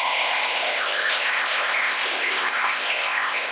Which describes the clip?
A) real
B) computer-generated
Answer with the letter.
B